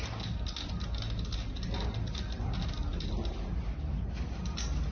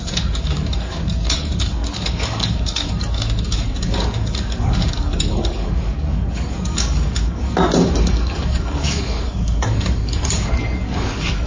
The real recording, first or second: first